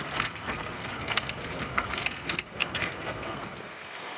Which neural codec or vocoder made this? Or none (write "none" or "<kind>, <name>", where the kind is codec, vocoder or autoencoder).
codec, SNAC